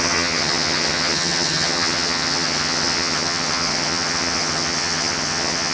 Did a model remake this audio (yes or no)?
yes